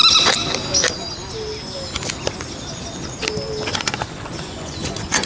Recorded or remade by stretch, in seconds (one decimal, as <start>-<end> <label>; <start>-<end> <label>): 0.0-3.7 recorded; 3.7-5.3 remade